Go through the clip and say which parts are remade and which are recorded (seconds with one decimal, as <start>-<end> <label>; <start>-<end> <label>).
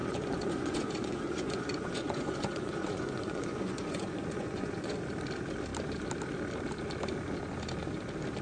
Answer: 0.0-4.9 remade; 4.9-8.4 recorded